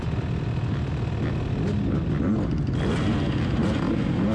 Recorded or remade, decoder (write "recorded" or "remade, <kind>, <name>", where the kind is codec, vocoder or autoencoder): recorded